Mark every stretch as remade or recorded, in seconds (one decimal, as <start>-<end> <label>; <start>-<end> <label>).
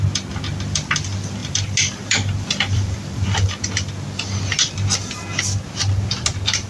0.0-1.4 recorded; 1.4-3.6 remade; 3.6-6.7 recorded